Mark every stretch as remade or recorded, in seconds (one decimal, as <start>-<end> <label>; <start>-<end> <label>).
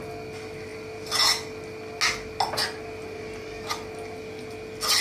0.0-5.0 recorded